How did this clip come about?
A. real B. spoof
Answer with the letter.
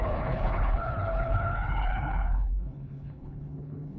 B